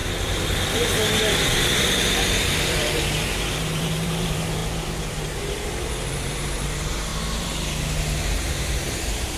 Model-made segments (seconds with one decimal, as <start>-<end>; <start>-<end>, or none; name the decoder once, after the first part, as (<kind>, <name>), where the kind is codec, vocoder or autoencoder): 1.8-4.6 (vocoder, BigVGAN v2); 5.4-7.1; 8.5-9.4